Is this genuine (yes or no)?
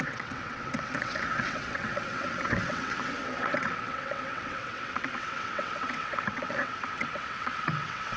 no